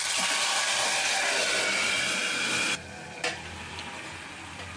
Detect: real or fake real